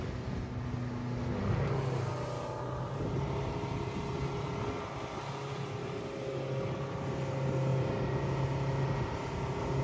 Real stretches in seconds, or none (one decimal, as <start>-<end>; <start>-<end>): 0.0-9.8